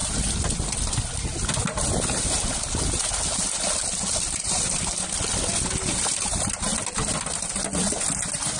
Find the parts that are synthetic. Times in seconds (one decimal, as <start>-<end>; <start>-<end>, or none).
none